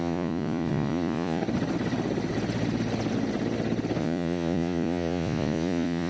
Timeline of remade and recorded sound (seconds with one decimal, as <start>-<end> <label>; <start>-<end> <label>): 0.0-1.4 remade; 1.4-4.0 recorded; 4.0-6.1 remade